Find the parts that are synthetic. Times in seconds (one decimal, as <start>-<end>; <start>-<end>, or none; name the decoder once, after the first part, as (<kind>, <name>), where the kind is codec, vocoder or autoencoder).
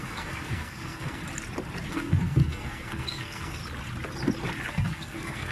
0.0-1.2 (codec, SNAC); 1.9-3.6; 4.7-5.5